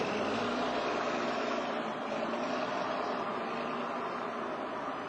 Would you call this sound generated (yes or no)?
no